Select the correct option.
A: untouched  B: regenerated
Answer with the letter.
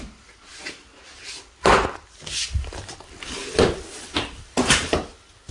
A